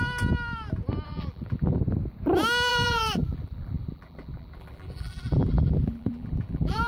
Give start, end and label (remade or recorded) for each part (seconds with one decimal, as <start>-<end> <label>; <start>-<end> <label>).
0.0-1.1 recorded; 1.1-1.8 remade; 1.8-2.7 recorded; 2.7-6.9 remade